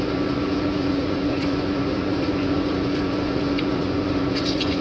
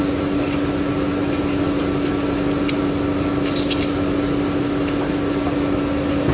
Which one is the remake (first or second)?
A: first